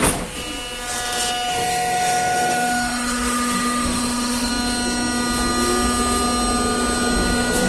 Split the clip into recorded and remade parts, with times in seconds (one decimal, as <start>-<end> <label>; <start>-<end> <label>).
0.0-1.5 recorded; 1.5-4.5 remade; 4.5-7.7 recorded